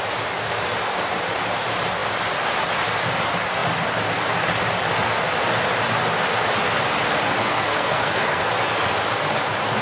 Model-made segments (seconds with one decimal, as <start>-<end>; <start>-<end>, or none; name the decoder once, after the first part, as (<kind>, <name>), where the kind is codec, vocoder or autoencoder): 7.4-8.5 (codec, SNAC)